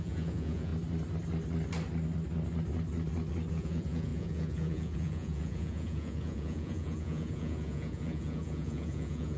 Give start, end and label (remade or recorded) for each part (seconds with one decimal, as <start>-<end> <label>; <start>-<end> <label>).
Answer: 0.0-0.7 remade; 0.7-3.5 recorded; 3.5-9.4 remade